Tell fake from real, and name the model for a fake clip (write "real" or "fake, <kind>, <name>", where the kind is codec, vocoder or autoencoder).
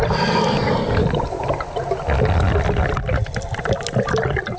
real